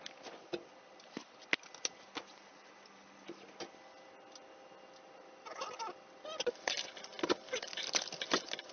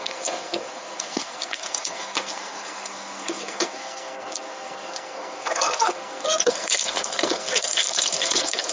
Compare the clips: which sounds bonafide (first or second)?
first